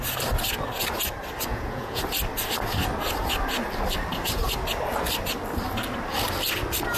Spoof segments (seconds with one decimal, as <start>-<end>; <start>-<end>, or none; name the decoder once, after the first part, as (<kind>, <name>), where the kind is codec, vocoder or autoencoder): 1.5-2.0 (vocoder, Vocos)

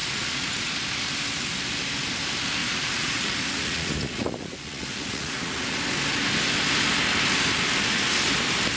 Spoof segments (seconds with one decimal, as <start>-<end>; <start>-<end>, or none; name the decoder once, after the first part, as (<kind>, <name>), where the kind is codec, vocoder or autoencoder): 0.0-0.7 (vocoder, Vocos); 2.6-5.8

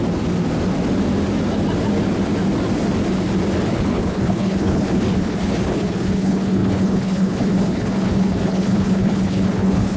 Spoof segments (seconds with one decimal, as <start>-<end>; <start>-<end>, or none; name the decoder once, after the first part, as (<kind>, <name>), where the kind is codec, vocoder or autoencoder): 3.7-10.0 (codec, HILCodec)

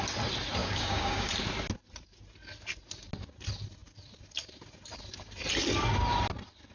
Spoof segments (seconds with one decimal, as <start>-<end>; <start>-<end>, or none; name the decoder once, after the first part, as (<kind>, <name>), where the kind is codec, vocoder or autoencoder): 0.6-1.3 (codec, DAC)

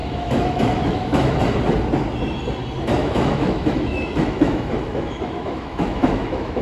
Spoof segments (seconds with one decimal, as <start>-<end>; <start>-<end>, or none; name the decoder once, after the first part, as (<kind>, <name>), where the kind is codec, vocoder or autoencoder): 0.0-1.4 (autoencoder, DAC-VAE); 3.0-6.6

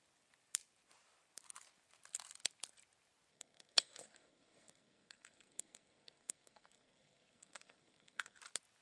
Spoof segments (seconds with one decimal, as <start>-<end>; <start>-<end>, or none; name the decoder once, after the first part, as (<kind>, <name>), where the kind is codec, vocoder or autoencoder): 3.3-8.4 (codec, SNAC)

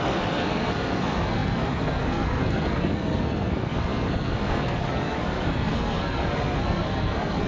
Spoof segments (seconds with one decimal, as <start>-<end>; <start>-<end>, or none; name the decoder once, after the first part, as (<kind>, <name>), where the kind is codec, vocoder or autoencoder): 0.0-7.5 (codec, SNAC)

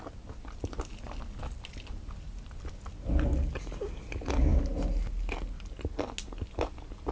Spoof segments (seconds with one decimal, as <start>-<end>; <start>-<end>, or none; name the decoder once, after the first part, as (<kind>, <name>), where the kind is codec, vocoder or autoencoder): none